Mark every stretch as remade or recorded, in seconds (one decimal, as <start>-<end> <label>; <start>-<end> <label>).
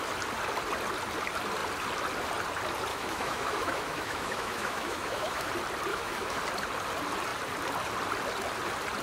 0.0-2.9 recorded; 2.9-5.5 remade; 5.5-5.9 recorded; 5.9-6.4 remade; 6.4-9.0 recorded